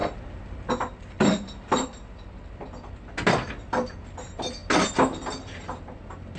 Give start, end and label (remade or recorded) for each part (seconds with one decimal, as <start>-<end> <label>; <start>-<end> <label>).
0.0-6.4 recorded